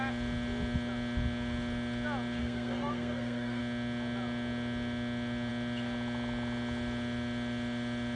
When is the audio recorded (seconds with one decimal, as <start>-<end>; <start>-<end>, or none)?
0.0-2.4; 3.6-8.2